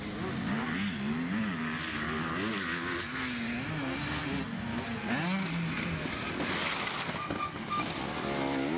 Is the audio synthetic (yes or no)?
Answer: no